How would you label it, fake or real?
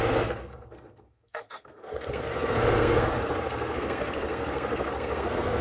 fake